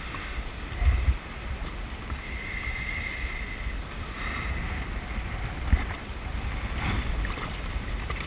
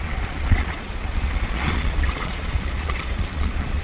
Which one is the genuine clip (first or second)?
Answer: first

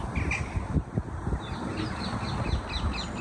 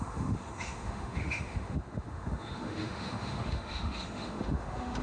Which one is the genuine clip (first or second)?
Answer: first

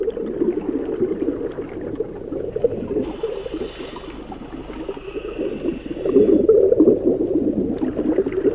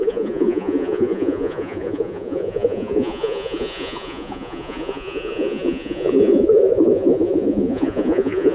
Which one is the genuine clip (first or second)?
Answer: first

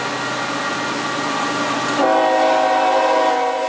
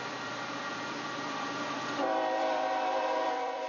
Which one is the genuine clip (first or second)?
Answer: first